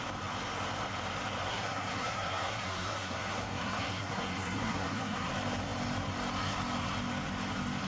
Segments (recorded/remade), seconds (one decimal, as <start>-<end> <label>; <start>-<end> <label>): 0.0-1.5 recorded; 1.5-5.3 remade; 5.3-7.9 recorded